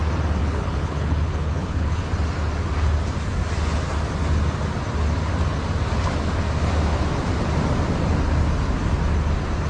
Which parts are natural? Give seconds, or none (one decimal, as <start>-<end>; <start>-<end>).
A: 0.0-0.4; 2.1-9.7